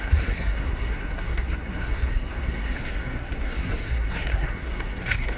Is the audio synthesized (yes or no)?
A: yes